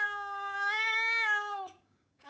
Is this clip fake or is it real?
fake